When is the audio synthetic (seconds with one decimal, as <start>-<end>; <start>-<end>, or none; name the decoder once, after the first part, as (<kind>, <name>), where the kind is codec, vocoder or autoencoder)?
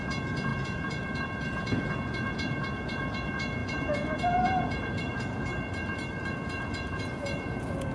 0.0-5.5 (vocoder, Vocos); 6.3-7.9